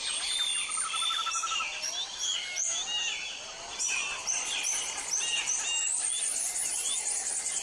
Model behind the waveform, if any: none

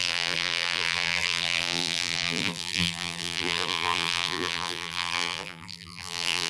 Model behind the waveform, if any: vocoder, BigVGAN v2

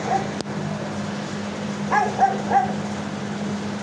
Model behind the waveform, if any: none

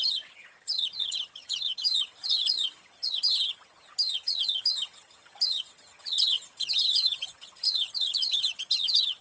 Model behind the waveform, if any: vocoder, HiFi-GAN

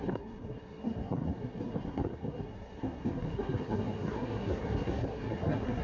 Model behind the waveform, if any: codec, SNAC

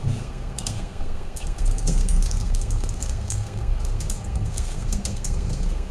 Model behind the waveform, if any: codec, SNAC